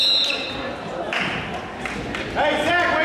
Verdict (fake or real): real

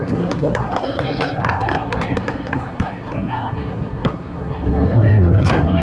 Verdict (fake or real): fake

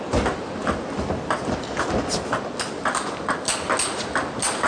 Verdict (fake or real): real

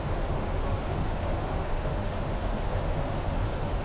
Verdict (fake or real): fake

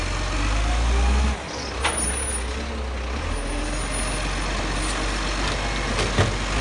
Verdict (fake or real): real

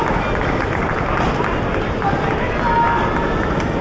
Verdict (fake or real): real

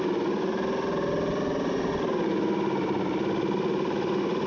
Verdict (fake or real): real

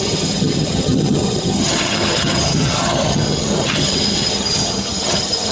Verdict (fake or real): fake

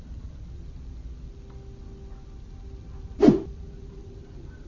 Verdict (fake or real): real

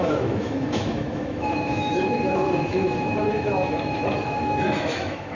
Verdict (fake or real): fake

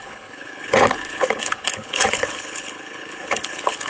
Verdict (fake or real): fake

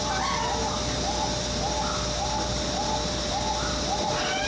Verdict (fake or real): real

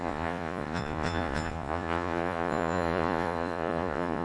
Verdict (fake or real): fake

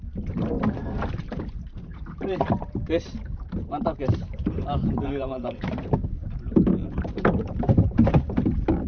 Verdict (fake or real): fake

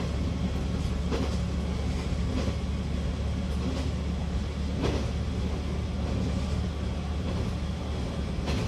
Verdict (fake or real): real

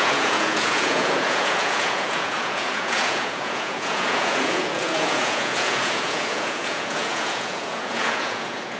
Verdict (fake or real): fake